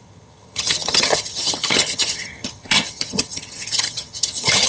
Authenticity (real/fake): fake